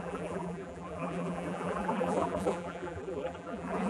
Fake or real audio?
fake